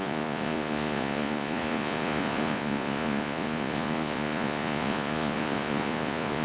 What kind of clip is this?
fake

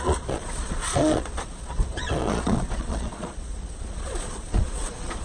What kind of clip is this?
fake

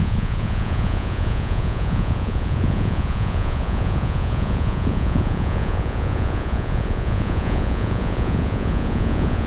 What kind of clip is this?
fake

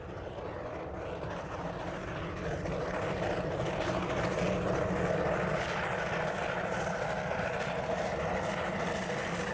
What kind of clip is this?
real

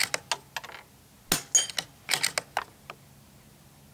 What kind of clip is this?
real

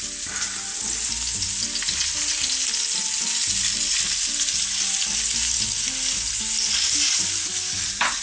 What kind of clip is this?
real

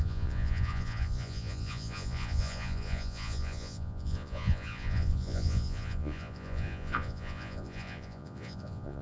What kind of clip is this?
fake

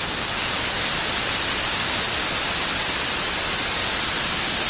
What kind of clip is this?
real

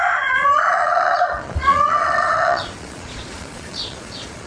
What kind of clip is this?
fake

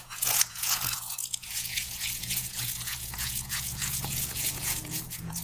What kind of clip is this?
fake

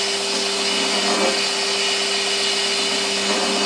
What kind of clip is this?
real